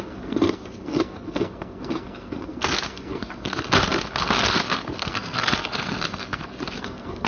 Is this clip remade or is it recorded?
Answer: remade